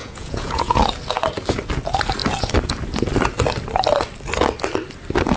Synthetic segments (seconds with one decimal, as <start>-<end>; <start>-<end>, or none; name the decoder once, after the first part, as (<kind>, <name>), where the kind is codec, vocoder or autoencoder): 0.0-0.8 (vocoder, Vocos)